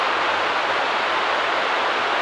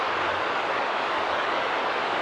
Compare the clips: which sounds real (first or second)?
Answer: first